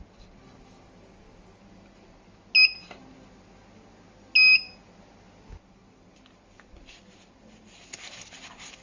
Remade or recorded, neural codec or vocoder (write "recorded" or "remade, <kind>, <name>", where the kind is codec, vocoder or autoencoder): recorded